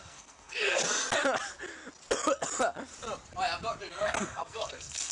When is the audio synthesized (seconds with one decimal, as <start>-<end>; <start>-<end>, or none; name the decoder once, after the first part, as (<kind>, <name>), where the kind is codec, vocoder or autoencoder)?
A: 0.0-0.8 (codec, SNAC); 3.9-5.1